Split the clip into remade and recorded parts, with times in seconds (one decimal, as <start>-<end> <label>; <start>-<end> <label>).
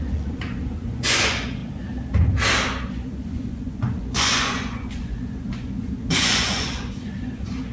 0.0-1.6 remade; 1.6-2.9 recorded; 2.9-7.7 remade